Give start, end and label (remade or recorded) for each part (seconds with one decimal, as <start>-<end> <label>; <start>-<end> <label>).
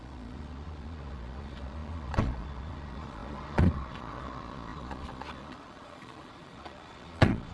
0.0-7.5 remade